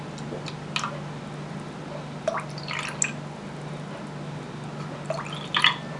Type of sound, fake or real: real